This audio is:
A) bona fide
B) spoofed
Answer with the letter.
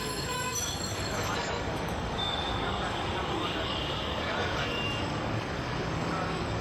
B